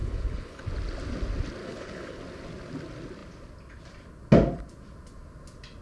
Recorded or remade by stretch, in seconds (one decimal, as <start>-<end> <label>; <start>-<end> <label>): 0.0-0.6 remade; 0.6-1.6 recorded; 1.6-2.2 remade; 2.2-5.8 recorded

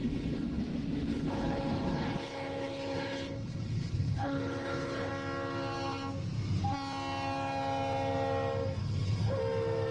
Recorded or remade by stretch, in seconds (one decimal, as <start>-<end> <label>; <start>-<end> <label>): 0.0-0.6 remade; 0.6-1.1 recorded; 1.1-5.1 remade; 5.1-8.8 recorded; 8.8-9.4 remade; 9.4-9.9 recorded

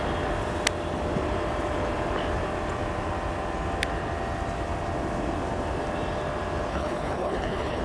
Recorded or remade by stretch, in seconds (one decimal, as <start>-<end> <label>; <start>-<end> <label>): 0.0-6.7 recorded; 6.7-7.8 remade

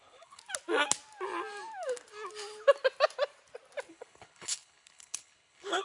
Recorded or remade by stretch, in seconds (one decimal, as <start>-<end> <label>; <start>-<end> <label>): 0.0-0.4 remade; 0.4-3.9 recorded; 3.9-5.8 remade

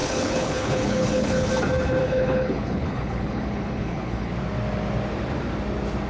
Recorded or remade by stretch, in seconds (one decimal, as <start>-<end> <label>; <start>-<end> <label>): 0.0-1.5 remade; 1.5-2.0 recorded; 2.0-4.3 remade; 4.3-6.1 recorded

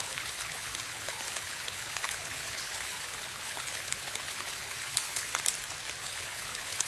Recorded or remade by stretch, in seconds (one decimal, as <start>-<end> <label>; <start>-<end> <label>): 0.0-5.3 remade; 5.3-6.0 recorded; 6.0-6.9 remade

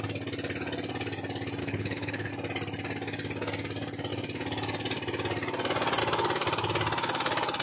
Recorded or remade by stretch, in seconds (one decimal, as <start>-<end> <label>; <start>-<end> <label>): 0.0-1.6 recorded; 1.6-2.3 remade; 2.3-7.6 recorded